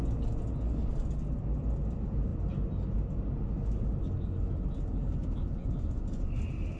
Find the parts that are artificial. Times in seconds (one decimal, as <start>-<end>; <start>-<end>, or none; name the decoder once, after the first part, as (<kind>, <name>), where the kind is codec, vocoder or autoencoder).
5.6-6.3 (vocoder, Vocos)

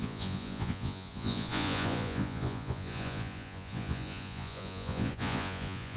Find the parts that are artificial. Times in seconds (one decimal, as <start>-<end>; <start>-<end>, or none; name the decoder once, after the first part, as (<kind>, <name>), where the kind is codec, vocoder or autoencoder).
0.0-6.0 (vocoder, Vocos)